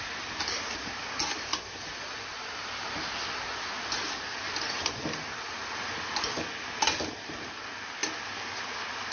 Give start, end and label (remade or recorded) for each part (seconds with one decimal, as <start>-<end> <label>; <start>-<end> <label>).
0.0-9.1 recorded